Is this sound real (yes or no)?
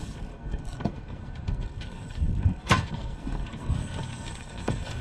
no